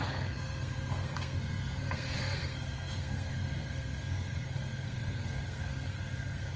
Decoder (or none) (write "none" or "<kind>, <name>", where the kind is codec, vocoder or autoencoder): codec, SNAC